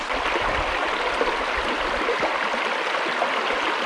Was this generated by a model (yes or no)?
no